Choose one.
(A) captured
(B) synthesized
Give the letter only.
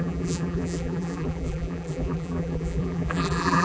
B